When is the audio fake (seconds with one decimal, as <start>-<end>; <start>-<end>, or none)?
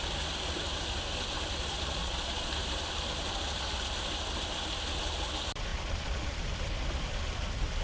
2.0-2.5; 5.7-6.4